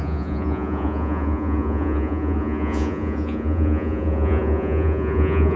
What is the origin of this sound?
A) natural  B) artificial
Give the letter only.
B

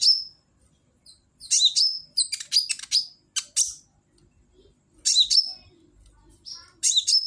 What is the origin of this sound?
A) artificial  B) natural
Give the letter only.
B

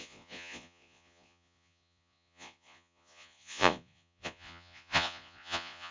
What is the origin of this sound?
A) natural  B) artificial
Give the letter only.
B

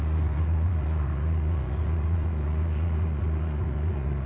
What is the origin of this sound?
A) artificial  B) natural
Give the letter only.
A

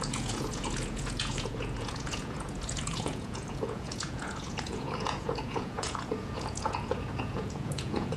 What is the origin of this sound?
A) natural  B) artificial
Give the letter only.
B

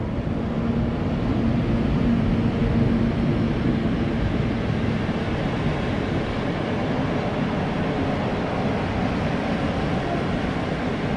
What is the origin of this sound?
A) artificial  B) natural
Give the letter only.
B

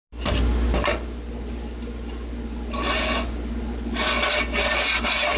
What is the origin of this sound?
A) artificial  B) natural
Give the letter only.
B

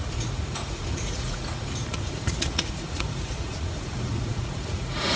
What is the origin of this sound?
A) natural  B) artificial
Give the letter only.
B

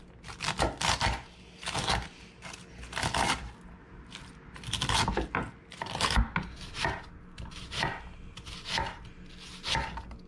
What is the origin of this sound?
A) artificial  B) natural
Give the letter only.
B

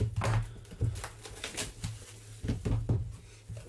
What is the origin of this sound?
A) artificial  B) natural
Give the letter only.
B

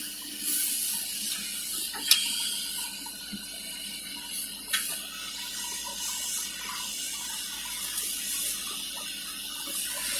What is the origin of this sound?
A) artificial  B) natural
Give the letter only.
B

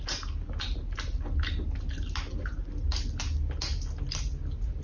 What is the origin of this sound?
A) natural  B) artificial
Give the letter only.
A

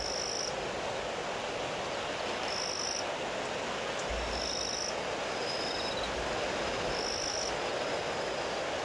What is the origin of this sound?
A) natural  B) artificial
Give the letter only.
A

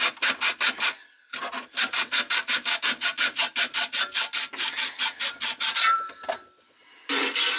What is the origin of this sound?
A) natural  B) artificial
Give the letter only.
A